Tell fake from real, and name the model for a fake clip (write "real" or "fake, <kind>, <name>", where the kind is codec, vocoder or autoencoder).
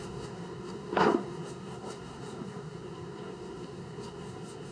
fake, codec, SNAC